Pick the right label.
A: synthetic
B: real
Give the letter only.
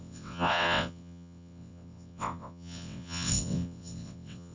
A